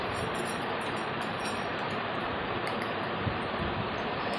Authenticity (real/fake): fake